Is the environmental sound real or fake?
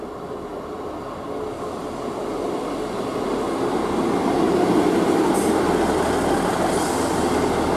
real